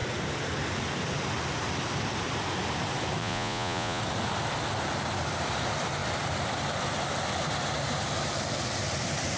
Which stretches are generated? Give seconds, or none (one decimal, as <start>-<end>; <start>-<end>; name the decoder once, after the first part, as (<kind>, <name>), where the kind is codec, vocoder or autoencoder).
3.2-4.0 (vocoder, Vocos)